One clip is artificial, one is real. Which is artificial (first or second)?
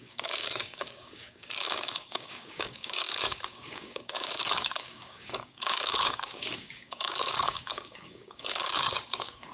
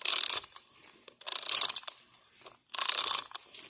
first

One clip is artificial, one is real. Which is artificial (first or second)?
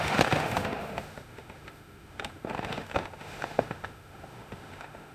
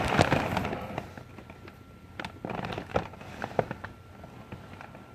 first